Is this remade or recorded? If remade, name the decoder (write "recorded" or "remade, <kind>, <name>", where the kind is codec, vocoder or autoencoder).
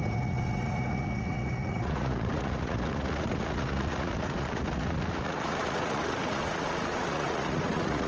remade, vocoder, Vocos